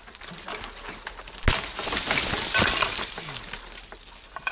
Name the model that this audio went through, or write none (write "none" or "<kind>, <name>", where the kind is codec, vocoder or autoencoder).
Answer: none